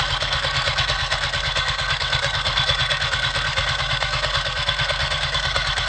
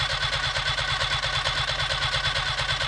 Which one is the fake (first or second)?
first